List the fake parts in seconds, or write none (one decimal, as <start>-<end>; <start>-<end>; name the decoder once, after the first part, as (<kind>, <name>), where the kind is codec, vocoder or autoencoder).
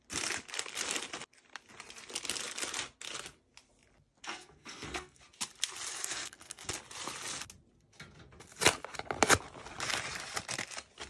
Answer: 4.2-5.2 (codec, SNAC); 5.9-6.7